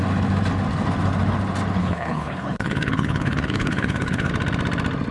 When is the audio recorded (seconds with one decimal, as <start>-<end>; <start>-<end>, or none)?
0.0-1.8; 4.3-5.1